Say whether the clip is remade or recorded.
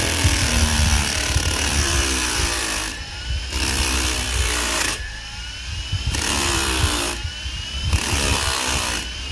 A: remade